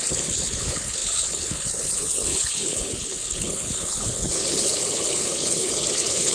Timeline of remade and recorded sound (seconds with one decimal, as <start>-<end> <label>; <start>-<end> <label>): 0.0-6.3 remade